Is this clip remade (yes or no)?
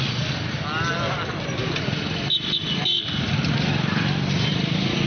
no